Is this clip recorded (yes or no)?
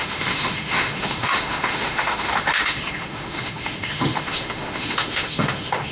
no